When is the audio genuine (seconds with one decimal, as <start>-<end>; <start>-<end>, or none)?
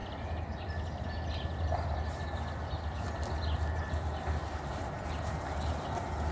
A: 0.0-6.3